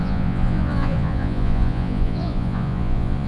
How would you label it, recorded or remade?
remade